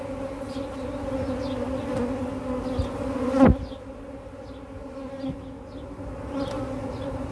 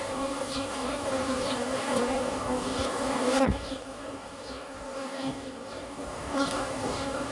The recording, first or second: first